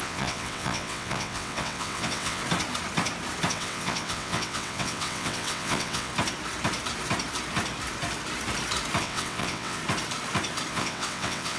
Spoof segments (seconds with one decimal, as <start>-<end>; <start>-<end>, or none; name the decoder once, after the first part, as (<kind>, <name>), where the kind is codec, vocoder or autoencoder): 0.0-2.4 (vocoder, WaveNeXt); 3.5-6.1; 9.0-9.8; 10.7-11.6